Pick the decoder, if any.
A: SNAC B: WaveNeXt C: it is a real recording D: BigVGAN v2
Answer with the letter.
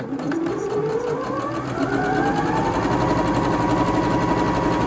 C